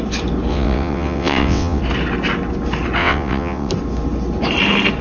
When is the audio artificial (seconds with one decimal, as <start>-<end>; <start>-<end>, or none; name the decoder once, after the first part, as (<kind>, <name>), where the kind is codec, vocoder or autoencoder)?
0.5-1.8 (vocoder, WaveNeXt); 3.0-3.7